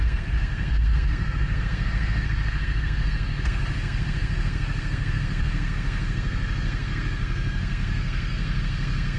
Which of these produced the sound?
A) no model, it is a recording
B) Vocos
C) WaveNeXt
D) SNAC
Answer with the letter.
D